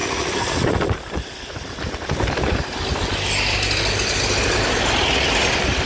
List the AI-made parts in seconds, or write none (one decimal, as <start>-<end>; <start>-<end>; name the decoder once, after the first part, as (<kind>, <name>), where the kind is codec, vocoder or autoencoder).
0.0-0.7 (vocoder, Vocos)